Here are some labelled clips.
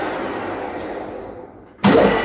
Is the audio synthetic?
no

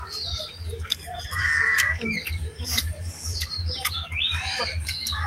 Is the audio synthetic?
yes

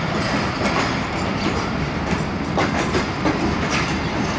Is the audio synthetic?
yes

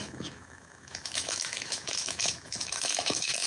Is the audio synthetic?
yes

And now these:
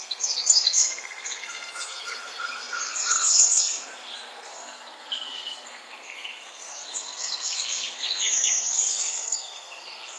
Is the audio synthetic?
yes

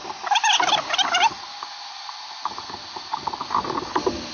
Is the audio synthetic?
no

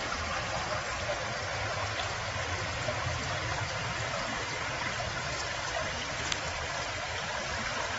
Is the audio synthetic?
no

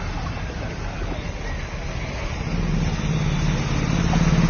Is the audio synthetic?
no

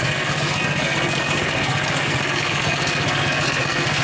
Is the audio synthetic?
yes